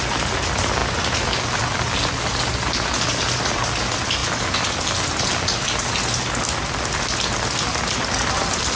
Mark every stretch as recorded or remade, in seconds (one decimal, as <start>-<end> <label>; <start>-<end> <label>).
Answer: 0.0-8.8 recorded